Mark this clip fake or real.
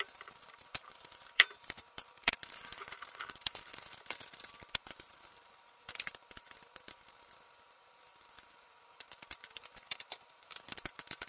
fake